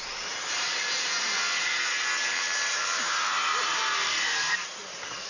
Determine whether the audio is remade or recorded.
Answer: remade